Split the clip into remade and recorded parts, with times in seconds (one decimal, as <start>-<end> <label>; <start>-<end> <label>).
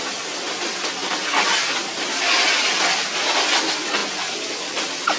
0.0-5.2 recorded